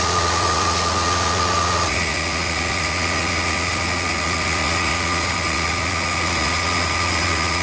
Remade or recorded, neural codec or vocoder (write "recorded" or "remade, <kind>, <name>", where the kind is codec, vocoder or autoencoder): remade, vocoder, Vocos